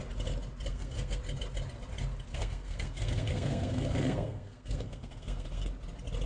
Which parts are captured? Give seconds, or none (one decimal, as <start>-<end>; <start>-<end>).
0.0-0.7; 1.2-2.3; 5.7-6.3